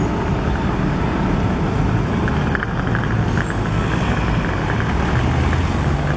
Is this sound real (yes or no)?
yes